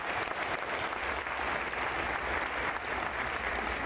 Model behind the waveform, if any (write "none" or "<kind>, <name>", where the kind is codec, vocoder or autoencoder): none